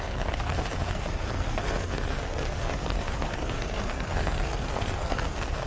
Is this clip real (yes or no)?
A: no